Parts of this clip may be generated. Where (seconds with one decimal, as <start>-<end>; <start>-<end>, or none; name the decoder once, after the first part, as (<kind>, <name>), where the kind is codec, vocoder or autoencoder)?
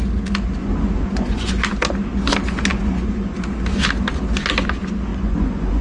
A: 0.6-1.5 (vocoder, Vocos); 2.7-3.4; 5.1-5.8